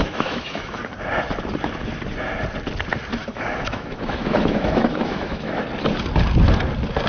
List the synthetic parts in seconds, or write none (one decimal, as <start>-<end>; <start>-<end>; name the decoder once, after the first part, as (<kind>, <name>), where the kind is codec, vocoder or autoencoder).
0.0-0.8 (autoencoder, DAC-VAE); 3.2-5.6